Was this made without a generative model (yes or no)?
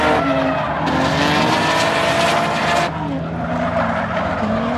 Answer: yes